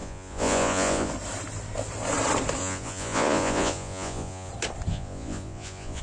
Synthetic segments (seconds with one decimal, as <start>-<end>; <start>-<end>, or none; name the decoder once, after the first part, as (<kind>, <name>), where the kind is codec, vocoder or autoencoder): 0.0-1.1 (vocoder, Vocos); 2.6-4.5; 4.9-6.0